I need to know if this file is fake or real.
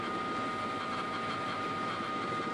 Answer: real